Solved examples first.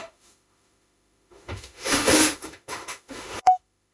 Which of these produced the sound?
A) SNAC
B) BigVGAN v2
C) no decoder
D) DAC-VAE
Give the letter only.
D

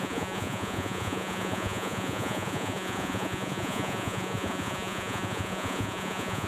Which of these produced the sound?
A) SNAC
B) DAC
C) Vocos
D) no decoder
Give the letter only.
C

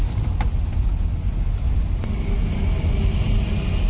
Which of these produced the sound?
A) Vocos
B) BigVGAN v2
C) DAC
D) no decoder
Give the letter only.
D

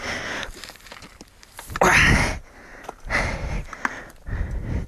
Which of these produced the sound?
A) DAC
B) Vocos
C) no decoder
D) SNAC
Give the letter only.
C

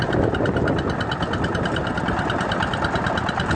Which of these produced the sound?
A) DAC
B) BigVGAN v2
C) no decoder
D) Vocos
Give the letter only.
C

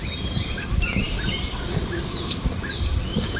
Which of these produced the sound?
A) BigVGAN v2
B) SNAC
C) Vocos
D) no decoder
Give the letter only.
A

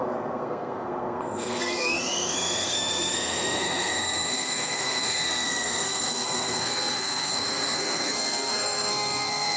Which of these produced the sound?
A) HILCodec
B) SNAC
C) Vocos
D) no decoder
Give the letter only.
B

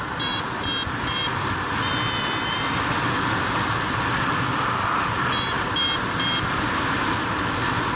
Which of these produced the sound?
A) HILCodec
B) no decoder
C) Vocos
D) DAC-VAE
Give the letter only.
B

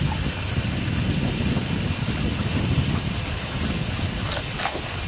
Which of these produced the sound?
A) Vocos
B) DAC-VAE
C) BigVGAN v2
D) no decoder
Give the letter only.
D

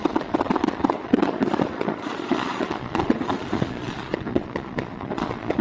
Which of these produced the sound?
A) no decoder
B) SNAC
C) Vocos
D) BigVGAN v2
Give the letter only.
C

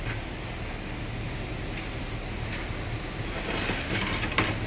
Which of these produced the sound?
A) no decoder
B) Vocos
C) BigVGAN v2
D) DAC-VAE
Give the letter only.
A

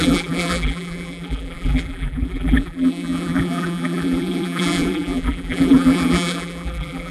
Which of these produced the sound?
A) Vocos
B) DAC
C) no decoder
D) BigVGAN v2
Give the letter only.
D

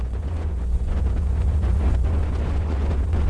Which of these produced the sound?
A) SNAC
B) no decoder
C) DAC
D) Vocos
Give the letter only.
D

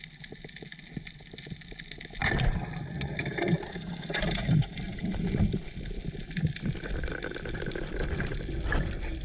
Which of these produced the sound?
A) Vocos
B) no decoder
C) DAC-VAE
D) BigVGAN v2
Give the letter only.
B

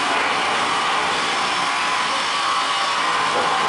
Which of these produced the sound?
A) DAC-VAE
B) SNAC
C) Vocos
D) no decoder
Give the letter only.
D